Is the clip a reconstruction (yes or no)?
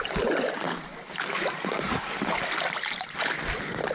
no